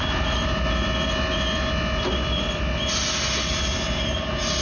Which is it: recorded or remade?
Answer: recorded